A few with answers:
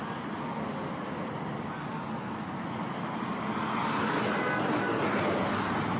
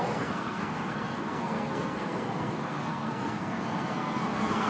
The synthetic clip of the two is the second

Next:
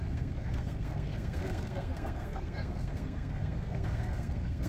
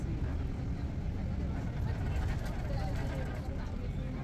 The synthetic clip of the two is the first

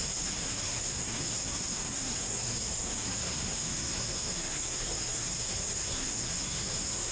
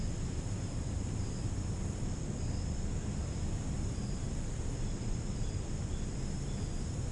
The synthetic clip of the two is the first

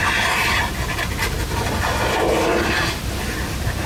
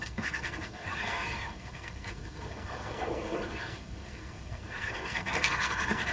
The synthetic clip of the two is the second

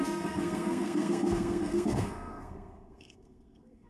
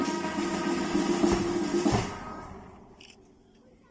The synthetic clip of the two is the first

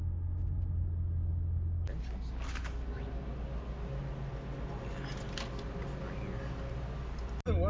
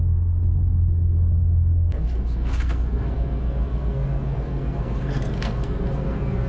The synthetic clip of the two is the second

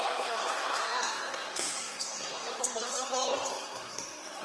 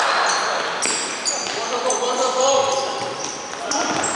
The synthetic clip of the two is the first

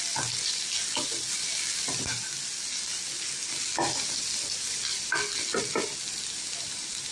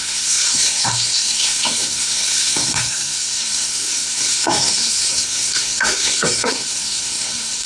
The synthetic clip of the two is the second